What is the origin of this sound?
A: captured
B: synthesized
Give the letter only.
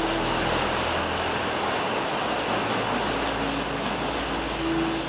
A